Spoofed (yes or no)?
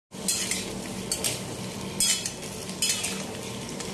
no